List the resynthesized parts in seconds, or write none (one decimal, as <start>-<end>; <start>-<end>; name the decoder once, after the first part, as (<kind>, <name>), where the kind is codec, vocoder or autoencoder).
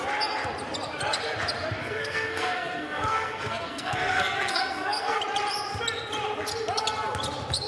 1.8-5.2 (codec, SNAC)